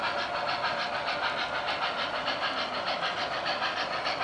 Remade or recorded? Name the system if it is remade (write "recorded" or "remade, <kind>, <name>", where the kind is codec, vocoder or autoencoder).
recorded